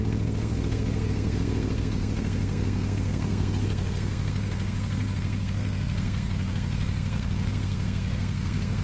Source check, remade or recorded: remade